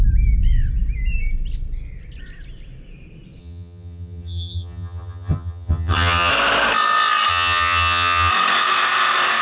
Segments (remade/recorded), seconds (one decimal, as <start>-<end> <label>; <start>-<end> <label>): 0.0-3.4 recorded; 3.4-6.3 remade; 6.3-7.3 recorded; 7.3-8.3 remade; 8.3-9.4 recorded